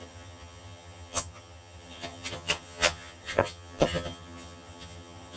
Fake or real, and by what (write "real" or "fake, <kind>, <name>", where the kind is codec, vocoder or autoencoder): fake, vocoder, HiFi-GAN